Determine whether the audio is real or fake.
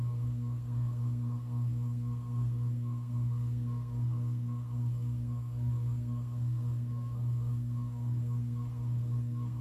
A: fake